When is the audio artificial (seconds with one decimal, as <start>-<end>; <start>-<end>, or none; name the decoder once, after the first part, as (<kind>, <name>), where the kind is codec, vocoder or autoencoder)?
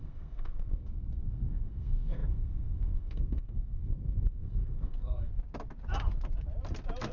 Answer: 0.0-5.3 (codec, SNAC)